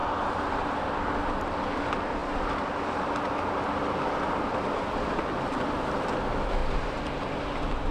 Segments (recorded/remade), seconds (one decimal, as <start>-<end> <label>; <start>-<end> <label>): 0.0-0.8 remade; 0.8-6.6 recorded; 6.6-7.2 remade; 7.2-7.9 recorded